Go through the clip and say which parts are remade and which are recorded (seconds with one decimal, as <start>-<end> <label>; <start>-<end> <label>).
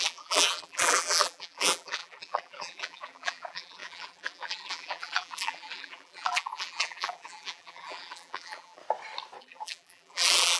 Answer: 0.0-8.8 remade; 8.8-9.4 recorded; 9.4-10.6 remade